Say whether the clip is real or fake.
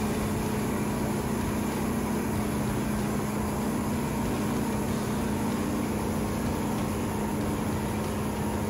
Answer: real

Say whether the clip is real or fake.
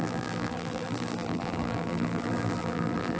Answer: fake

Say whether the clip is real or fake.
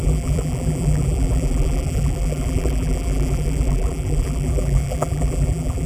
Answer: fake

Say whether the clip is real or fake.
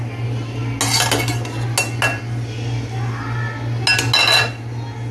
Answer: real